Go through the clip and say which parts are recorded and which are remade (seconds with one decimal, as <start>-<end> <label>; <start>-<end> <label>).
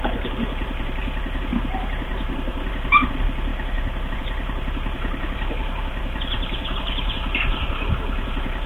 0.0-3.5 remade; 3.5-4.1 recorded; 4.1-8.7 remade